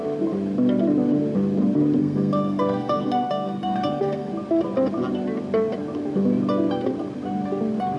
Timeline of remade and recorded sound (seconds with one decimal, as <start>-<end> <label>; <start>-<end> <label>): 0.0-2.0 recorded; 2.0-4.3 remade; 4.3-8.0 recorded